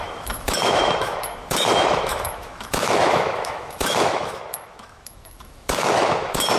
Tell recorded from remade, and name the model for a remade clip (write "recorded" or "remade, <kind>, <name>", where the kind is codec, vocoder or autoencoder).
remade, autoencoder, DAC-VAE